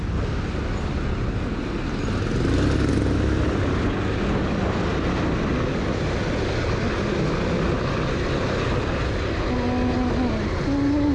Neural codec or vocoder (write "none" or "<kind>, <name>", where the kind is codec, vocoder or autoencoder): none